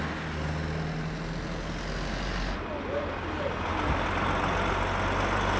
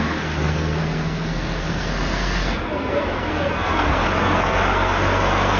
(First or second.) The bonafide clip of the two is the first